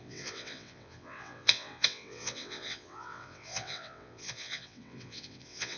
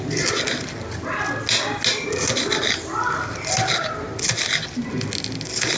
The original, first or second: second